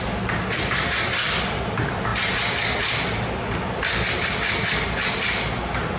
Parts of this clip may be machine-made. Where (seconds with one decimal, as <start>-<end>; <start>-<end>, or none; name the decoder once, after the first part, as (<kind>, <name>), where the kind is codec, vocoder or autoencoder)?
none